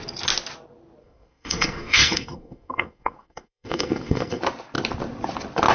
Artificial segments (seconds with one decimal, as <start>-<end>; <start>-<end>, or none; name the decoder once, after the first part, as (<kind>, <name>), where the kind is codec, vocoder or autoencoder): 1.0-4.4 (codec, SNAC)